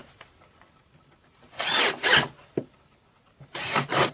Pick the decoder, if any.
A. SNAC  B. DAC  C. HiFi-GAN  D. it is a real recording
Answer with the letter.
D